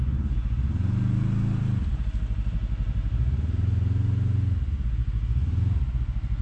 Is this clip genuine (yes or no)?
yes